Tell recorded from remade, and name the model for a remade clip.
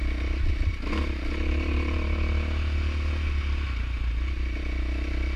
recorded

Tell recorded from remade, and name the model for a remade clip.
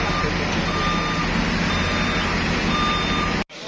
recorded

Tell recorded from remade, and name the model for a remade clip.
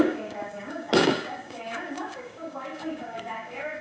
remade, codec, DAC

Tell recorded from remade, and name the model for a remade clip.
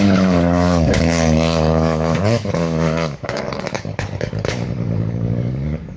remade, codec, DAC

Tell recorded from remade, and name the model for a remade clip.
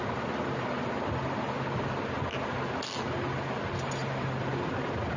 recorded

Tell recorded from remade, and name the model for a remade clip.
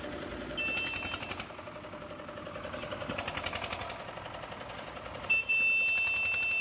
recorded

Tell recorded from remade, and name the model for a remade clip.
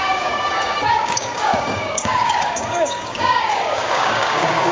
remade, codec, DAC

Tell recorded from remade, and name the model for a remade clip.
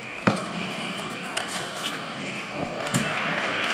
remade, codec, DAC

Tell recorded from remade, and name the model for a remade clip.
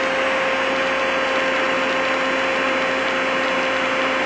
recorded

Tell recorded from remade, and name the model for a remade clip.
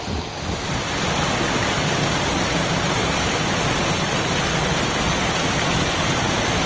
recorded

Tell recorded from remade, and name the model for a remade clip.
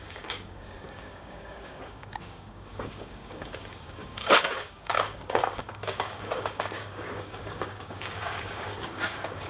remade, codec, DAC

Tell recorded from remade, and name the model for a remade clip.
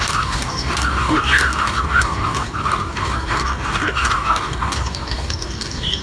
remade, codec, DAC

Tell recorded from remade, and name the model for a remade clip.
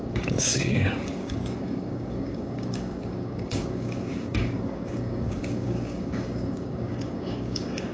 remade, codec, DAC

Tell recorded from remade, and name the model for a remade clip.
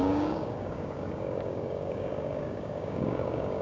remade, codec, DAC